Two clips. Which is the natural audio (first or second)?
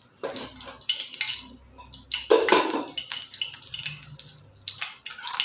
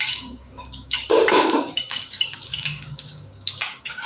first